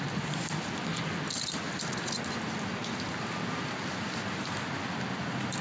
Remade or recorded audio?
recorded